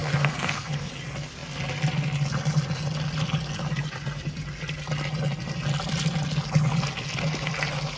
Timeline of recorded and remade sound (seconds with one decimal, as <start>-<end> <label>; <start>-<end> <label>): 0.0-0.9 remade; 0.9-8.0 recorded